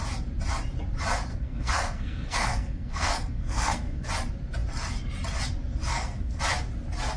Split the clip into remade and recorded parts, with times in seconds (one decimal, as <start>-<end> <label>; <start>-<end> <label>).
0.0-1.3 recorded; 1.3-4.1 remade; 4.1-5.9 recorded; 5.9-6.4 remade; 6.4-7.2 recorded